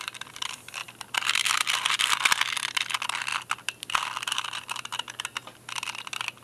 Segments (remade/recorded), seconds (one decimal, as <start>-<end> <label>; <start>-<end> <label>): 0.0-0.8 recorded; 0.8-2.0 remade; 2.0-3.3 recorded; 3.3-6.0 remade; 6.0-6.4 recorded